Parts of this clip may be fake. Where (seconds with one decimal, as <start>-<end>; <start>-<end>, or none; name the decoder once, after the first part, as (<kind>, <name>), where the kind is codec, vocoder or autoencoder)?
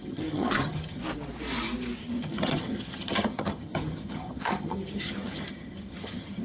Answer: 0.0-1.0 (vocoder, HiFi-GAN); 2.0-6.4